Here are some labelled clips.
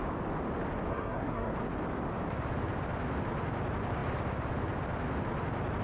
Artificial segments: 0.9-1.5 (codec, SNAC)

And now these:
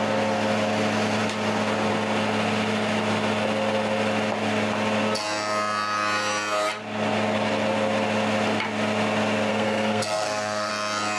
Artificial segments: 9.5-10.7 (codec, SNAC)